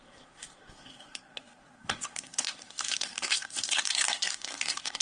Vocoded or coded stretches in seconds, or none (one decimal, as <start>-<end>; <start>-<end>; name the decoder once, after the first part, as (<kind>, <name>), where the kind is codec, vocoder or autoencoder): 0.0-5.0 (codec, SNAC)